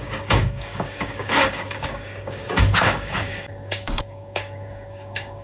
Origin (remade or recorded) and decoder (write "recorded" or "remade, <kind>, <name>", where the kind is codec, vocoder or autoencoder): remade, codec, DAC